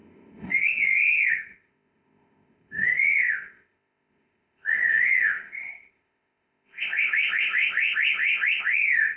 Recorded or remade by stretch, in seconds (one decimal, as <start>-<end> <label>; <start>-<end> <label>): 0.0-9.2 remade